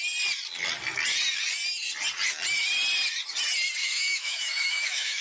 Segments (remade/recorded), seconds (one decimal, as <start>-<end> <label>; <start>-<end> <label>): 0.0-3.8 recorded; 3.8-5.2 remade